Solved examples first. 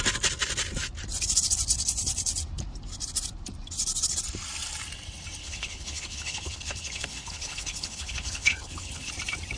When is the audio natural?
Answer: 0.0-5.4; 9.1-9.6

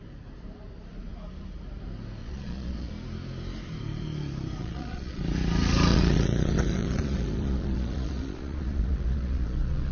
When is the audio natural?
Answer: 0.0-2.2; 2.9-4.6; 5.2-5.9